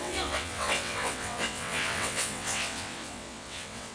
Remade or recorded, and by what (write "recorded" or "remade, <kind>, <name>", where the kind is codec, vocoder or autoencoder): remade, vocoder, WaveNeXt